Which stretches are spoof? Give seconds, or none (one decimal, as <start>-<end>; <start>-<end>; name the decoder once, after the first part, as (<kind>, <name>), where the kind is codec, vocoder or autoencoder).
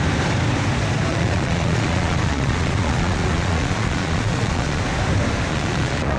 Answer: 1.1-4.8 (vocoder, Vocos); 5.5-6.2